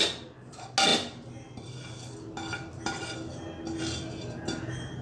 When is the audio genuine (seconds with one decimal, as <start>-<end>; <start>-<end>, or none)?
0.0-5.0